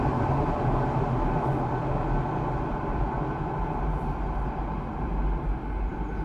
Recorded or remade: recorded